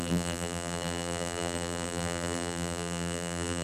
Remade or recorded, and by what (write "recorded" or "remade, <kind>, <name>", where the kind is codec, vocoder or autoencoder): remade, vocoder, BigVGAN v2